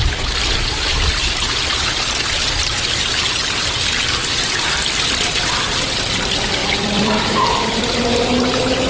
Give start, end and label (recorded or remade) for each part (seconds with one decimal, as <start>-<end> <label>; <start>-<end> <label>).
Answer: 0.0-6.6 recorded; 6.6-7.9 remade; 7.9-8.9 recorded